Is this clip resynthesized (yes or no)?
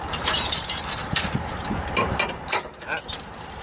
yes